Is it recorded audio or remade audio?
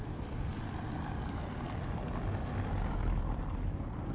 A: recorded